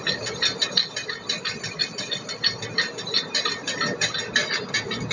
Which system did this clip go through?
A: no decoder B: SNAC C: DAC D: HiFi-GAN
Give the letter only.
A